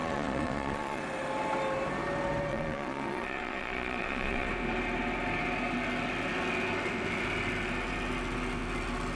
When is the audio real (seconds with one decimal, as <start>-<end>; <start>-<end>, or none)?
1.0-2.5; 4.5-9.2